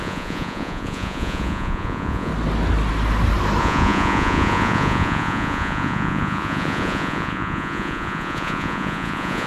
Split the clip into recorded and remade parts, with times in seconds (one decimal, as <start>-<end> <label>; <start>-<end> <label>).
0.0-2.3 remade; 2.3-3.6 recorded; 3.6-9.5 remade